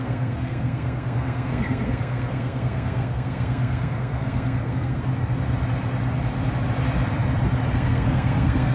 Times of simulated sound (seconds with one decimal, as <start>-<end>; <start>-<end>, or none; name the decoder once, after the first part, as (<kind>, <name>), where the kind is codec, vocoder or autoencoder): 0.0-5.1 (codec, SNAC); 7.7-8.7